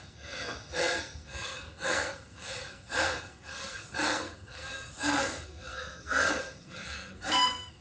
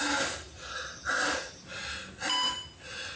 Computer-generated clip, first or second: first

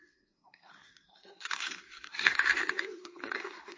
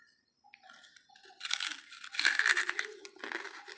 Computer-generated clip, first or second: first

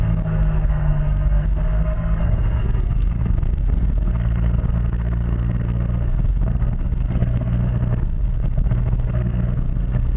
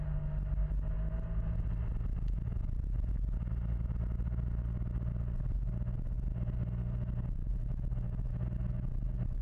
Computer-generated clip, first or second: first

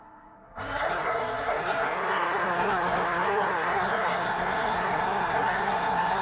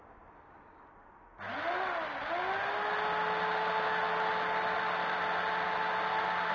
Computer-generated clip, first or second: first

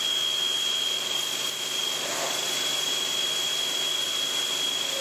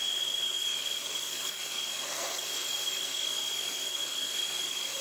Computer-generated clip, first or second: second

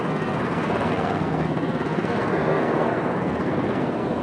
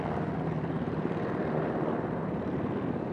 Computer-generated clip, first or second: first